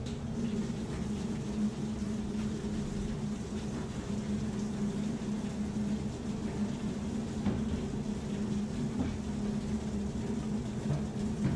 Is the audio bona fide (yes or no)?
yes